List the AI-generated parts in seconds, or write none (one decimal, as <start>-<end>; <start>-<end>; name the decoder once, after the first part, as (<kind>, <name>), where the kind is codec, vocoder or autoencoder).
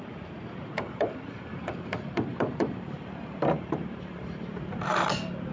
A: 0.6-1.7 (vocoder, BigVGAN v2); 2.3-5.1